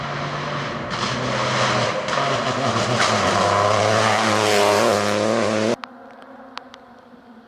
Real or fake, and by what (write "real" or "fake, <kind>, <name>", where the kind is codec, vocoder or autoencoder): real